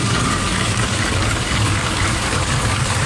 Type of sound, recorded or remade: remade